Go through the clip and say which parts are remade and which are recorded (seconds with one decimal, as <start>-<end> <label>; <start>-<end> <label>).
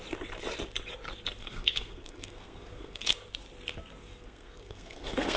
0.0-1.4 recorded; 1.4-3.1 remade; 3.1-4.0 recorded; 4.0-5.4 remade